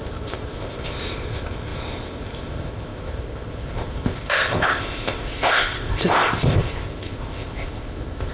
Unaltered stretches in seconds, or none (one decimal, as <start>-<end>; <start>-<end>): none

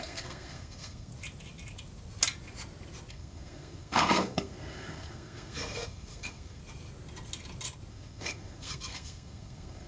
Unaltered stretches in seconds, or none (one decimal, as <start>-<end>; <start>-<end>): 1.1-3.1; 6.6-7.9

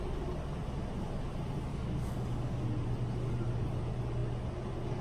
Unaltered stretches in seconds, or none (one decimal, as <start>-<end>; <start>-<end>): 0.0-1.7; 2.6-5.0